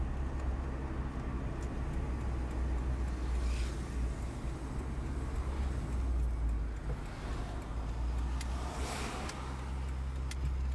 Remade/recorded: recorded